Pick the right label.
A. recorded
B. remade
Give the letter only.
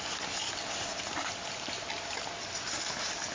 A